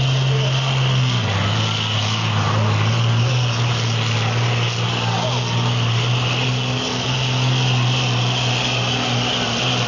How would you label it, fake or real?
real